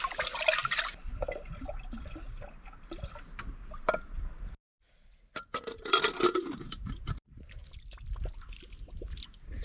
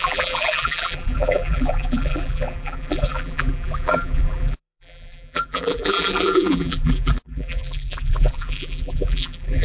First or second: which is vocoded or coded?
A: second